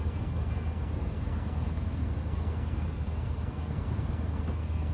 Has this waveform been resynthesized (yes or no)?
yes